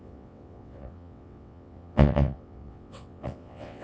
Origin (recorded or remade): remade